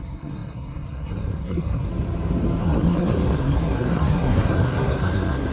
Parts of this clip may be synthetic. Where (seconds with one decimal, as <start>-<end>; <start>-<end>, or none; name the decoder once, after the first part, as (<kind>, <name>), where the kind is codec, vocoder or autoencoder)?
0.0-1.9 (codec, SNAC); 2.6-5.5